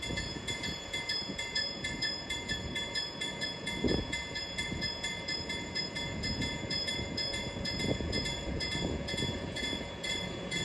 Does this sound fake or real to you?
fake